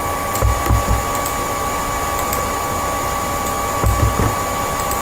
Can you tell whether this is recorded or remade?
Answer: recorded